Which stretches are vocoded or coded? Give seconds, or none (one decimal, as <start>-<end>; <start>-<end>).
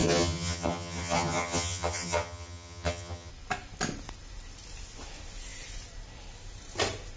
0.0-3.3